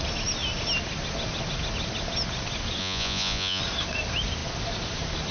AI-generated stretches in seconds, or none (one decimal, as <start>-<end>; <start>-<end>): 2.8-3.6